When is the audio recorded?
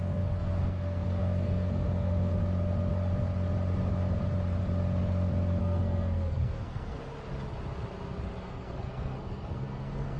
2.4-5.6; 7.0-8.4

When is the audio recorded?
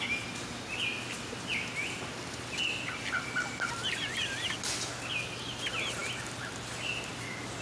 0.0-7.6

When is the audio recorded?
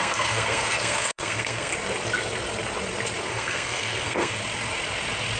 1.7-3.3; 4.4-5.4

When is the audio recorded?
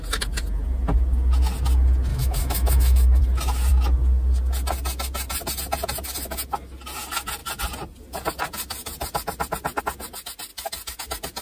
0.0-2.1; 3.2-11.4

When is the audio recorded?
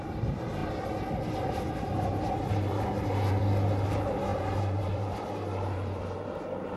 3.4-3.9